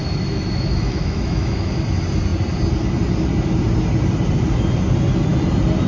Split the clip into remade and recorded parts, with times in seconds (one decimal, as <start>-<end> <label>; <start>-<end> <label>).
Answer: 0.0-1.7 remade; 1.7-5.9 recorded

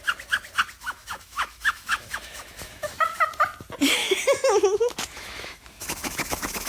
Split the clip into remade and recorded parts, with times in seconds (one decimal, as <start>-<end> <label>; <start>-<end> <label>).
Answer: 0.0-0.8 recorded; 0.8-3.2 remade; 3.2-4.0 recorded; 4.0-6.7 remade

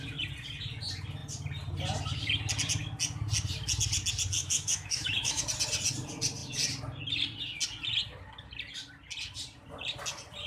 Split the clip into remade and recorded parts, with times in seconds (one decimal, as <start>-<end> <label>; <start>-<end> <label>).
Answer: 0.0-4.4 recorded; 4.4-5.4 remade; 5.4-10.5 recorded

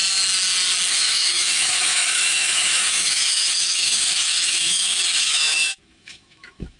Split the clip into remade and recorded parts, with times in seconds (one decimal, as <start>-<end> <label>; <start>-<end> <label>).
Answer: 0.0-0.9 recorded; 0.9-6.8 remade

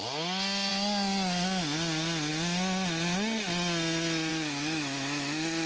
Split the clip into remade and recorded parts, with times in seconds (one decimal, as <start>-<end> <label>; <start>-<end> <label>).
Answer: 0.0-4.3 recorded; 4.3-5.7 remade

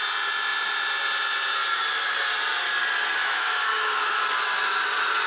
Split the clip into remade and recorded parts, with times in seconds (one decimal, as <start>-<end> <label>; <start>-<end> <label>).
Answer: 0.0-3.2 recorded; 3.2-4.2 remade; 4.2-5.3 recorded

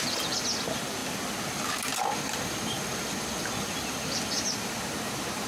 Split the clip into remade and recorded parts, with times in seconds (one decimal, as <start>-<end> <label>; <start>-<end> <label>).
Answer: 0.0-5.5 recorded

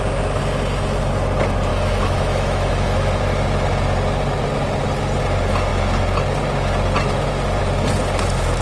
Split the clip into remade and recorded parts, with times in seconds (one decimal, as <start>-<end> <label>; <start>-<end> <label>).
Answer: 0.0-1.7 recorded; 1.7-3.2 remade; 3.2-8.6 recorded